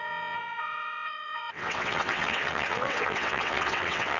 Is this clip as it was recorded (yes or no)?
no